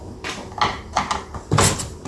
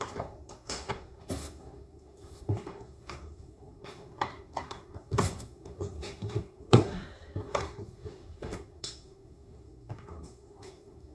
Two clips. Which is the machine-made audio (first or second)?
second